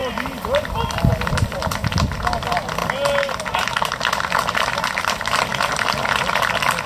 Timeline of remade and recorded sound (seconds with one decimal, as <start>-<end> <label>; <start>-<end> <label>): 0.0-6.9 recorded